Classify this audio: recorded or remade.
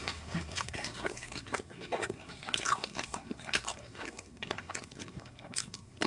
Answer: remade